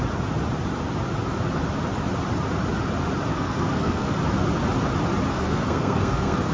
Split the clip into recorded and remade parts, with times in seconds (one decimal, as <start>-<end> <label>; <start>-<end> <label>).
0.0-3.3 recorded; 3.3-4.1 remade; 4.1-5.3 recorded; 5.3-6.5 remade